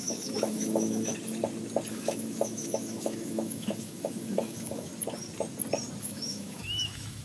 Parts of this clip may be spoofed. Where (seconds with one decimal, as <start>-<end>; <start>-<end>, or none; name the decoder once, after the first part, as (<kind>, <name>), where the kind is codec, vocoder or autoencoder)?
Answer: 0.0-1.1 (autoencoder, DAC-VAE); 1.9-4.9; 6.0-7.2